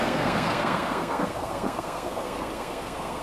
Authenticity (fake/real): fake